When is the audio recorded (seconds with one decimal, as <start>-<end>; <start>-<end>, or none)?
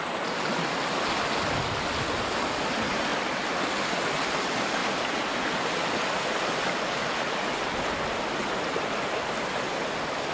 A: 0.0-10.3